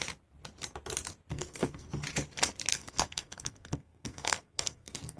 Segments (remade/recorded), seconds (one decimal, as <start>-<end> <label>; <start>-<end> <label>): 0.0-1.3 recorded; 1.3-1.9 remade; 1.9-2.7 recorded; 2.7-5.2 remade